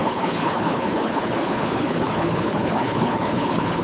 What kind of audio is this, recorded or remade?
remade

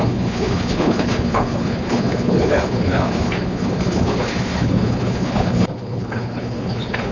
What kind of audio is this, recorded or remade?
remade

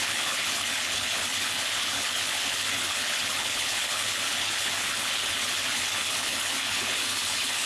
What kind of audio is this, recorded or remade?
remade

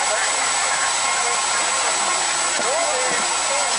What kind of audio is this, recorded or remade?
recorded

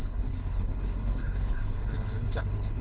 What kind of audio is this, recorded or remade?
remade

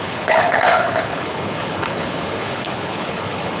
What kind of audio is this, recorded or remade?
remade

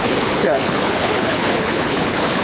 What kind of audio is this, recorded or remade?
remade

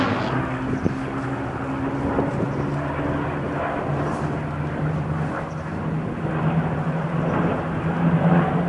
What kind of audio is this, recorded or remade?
recorded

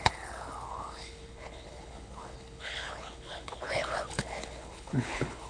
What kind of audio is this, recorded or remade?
remade